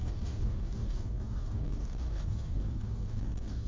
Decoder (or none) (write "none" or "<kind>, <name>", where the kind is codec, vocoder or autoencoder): codec, DAC